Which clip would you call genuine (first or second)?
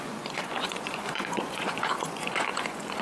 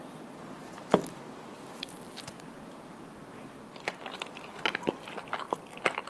second